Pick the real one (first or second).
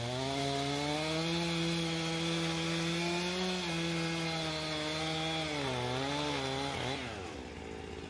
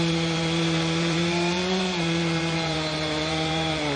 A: first